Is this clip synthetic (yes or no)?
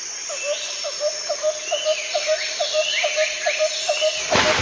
no